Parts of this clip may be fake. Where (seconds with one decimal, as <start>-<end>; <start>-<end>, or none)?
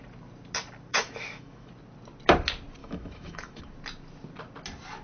0.9-1.7; 2.8-3.6